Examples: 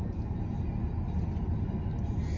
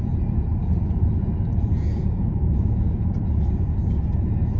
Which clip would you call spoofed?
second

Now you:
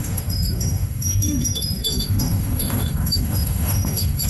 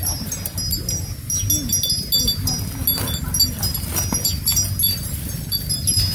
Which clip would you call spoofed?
first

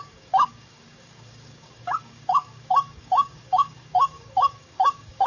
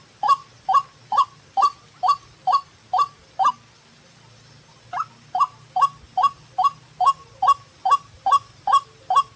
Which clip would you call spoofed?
first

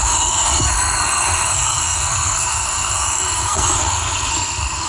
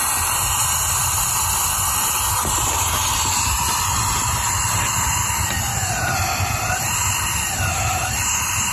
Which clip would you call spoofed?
first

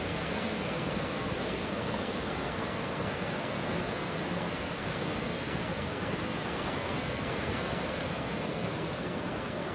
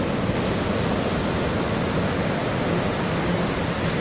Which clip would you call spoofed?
first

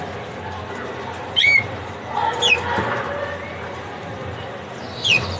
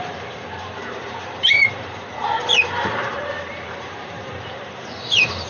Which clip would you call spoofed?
second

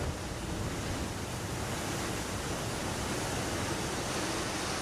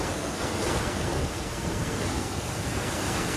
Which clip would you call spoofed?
second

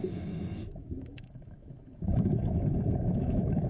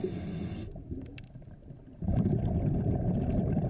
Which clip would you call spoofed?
first